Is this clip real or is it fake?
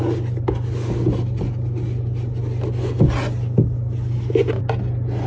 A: real